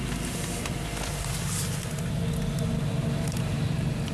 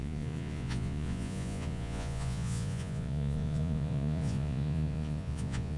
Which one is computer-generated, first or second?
second